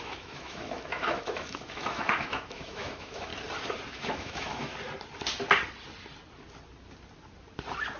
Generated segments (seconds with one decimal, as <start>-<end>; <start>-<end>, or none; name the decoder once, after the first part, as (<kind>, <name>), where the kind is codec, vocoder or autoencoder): 0.0-3.3 (autoencoder, DAC-VAE); 3.9-4.7